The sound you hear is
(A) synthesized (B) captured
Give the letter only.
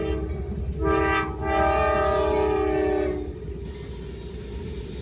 B